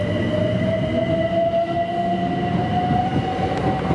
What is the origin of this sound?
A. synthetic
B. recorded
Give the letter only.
B